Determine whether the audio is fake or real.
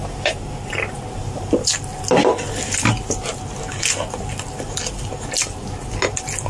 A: real